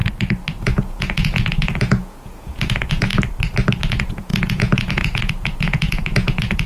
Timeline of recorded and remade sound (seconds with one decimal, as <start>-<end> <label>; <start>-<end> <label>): 0.0-0.6 recorded; 0.6-3.1 remade; 3.1-3.9 recorded; 3.9-6.7 remade